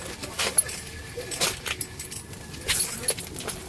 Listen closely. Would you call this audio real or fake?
real